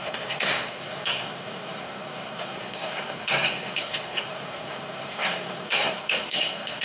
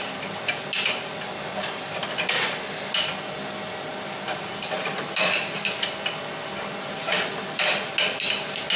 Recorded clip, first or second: second